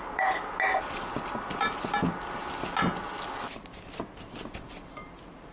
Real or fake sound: real